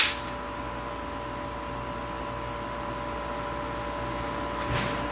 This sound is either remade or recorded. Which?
recorded